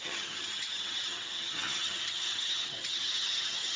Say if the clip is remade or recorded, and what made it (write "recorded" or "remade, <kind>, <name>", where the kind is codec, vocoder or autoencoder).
remade, vocoder, HiFi-GAN